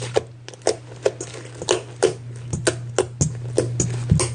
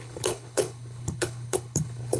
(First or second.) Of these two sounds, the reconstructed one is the second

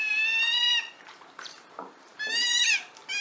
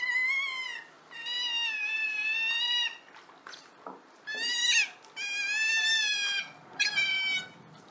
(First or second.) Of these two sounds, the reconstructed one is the first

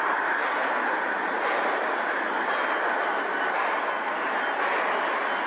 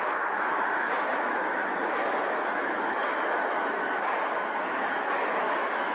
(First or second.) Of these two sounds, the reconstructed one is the second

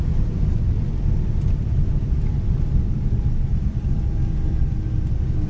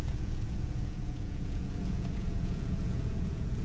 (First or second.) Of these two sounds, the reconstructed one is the second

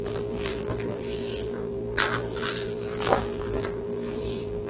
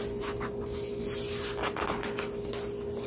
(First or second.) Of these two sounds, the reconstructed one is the first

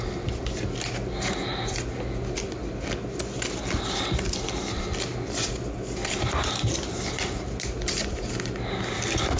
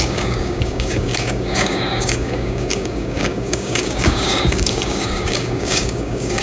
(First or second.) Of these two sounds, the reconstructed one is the second